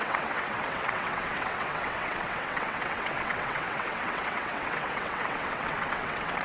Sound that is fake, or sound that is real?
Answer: fake